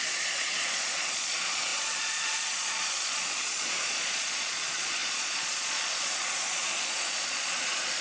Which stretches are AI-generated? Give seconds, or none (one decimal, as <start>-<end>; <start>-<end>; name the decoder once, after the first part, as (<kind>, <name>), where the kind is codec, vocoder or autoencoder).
0.0-8.0 (vocoder, Vocos)